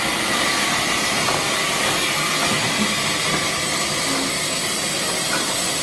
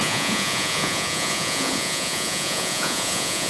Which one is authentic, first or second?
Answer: first